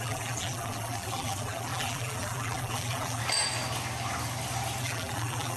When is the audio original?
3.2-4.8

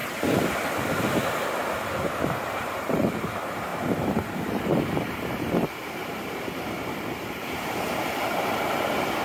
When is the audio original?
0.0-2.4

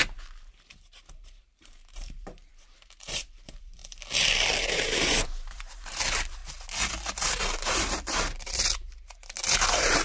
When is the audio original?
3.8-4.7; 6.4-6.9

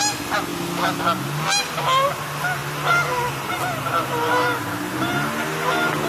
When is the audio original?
0.0-6.1

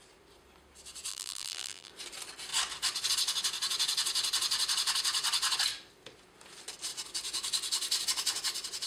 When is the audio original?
0.0-1.1; 1.9-8.9

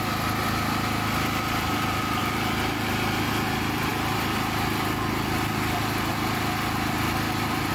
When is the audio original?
0.0-7.7

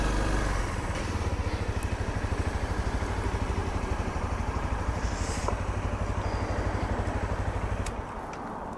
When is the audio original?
0.0-3.6; 5.4-8.8

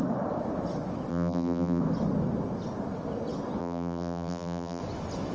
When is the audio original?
0.0-1.1; 1.8-3.6; 4.8-5.3